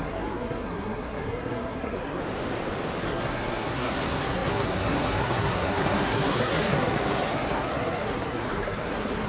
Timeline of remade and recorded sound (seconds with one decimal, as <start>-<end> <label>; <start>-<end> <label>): 0.0-2.2 remade; 2.2-3.0 recorded; 3.0-9.3 remade